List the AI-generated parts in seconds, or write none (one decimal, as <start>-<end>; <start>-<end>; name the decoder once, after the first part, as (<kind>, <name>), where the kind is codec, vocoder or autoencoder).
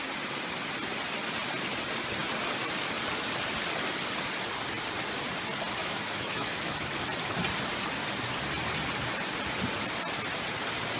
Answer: 5.8-6.9 (autoencoder, DAC-VAE)